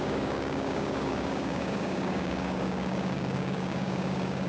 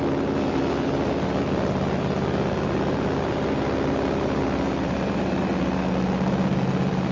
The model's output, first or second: first